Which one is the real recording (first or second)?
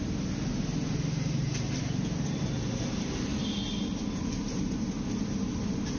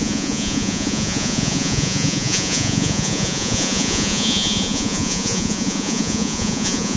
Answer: first